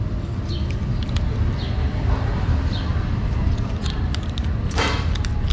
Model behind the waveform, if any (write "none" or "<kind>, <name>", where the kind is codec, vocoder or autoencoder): none